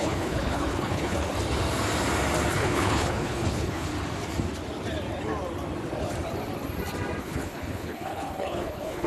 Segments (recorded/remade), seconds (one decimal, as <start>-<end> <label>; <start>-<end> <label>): 0.0-1.3 remade; 1.3-2.5 recorded; 2.5-3.9 remade; 3.9-7.2 recorded; 7.2-9.1 remade